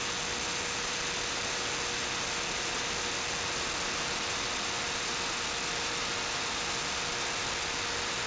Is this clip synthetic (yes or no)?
no